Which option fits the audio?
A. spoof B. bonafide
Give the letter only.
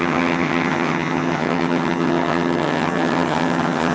A